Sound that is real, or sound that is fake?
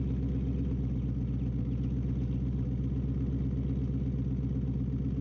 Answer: real